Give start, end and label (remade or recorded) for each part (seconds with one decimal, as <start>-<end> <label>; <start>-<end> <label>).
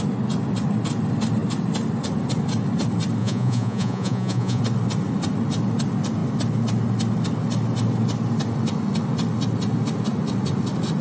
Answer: 0.0-3.2 recorded; 3.2-4.6 remade; 4.6-11.0 recorded